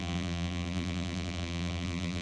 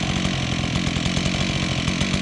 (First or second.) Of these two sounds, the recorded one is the second